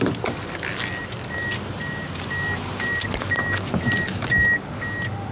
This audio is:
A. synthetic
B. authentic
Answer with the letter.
B